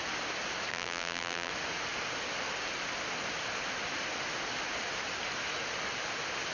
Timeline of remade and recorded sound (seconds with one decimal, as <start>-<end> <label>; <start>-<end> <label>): 0.0-0.7 recorded; 0.7-1.5 remade; 1.5-6.5 recorded